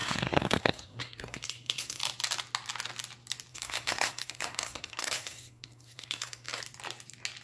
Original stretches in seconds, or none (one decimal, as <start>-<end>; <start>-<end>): 2.0-3.5; 6.6-7.4